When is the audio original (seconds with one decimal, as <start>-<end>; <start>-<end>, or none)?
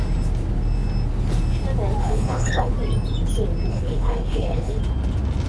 0.0-2.0; 2.7-3.7; 4.8-5.5